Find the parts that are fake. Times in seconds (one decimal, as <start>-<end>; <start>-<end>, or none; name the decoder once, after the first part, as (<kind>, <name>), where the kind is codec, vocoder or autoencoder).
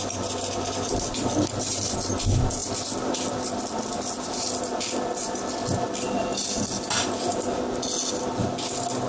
none